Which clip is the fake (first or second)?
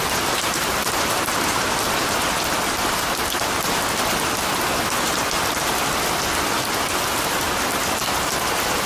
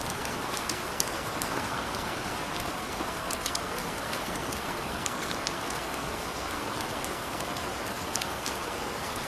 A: second